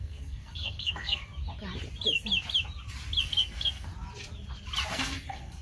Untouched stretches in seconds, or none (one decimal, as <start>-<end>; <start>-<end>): 1.2-3.2; 3.9-4.9